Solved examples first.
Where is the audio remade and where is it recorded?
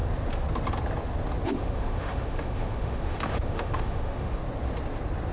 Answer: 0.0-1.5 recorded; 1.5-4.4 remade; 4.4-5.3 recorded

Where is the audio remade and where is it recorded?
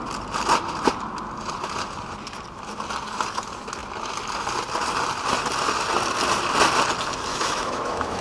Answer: 0.0-7.3 recorded; 7.3-8.2 remade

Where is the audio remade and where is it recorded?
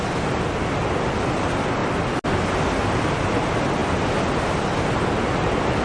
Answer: 0.0-5.8 recorded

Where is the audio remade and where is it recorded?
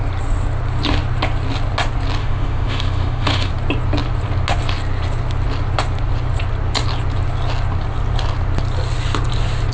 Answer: 0.0-2.2 recorded; 2.2-3.5 remade; 3.5-9.7 recorded